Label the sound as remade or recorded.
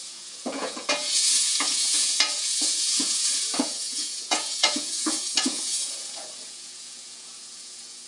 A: remade